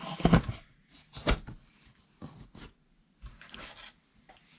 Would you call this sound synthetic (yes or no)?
no